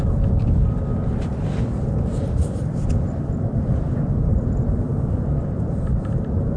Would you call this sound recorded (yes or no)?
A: no